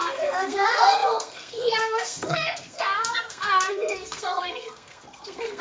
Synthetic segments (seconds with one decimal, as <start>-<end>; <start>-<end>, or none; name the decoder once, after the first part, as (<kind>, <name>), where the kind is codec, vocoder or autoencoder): 0.0-5.6 (codec, SNAC)